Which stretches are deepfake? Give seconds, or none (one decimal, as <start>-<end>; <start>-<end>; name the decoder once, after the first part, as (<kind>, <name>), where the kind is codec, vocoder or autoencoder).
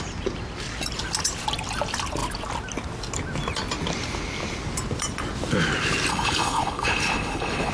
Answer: 6.1-7.7 (codec, HILCodec)